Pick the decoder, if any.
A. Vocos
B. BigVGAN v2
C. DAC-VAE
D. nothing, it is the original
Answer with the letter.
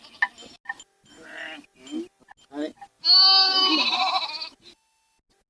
D